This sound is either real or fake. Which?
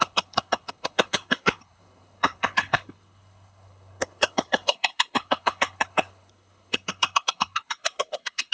fake